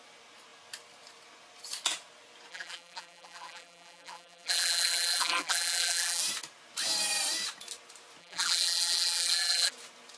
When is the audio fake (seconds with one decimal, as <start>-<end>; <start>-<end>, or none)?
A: 2.5-6.2; 8.2-9.7